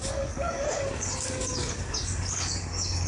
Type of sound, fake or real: fake